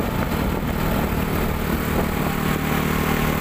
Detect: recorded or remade recorded